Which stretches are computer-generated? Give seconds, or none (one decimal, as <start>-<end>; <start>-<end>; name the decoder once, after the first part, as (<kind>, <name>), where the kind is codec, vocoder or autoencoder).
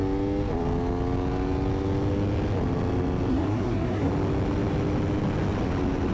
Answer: 3.3-4.1 (codec, SNAC)